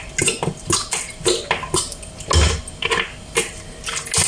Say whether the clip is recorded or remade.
recorded